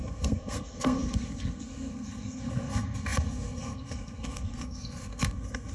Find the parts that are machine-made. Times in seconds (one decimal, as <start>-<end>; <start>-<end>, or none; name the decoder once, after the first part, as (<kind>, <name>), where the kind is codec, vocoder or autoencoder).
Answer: 0.0-5.7 (codec, SNAC)